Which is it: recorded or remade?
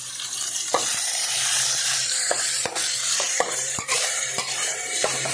remade